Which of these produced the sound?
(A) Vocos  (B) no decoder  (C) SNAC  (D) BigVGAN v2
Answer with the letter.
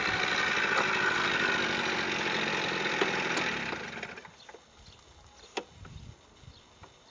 B